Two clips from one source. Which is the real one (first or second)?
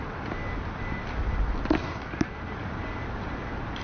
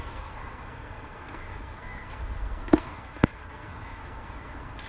first